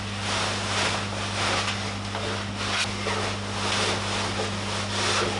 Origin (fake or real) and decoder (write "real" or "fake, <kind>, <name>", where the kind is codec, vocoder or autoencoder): real